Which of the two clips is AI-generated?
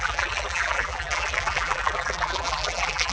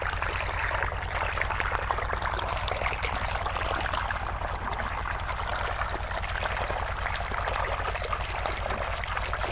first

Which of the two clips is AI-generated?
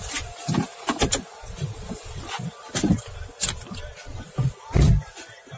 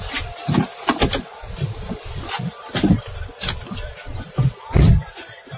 second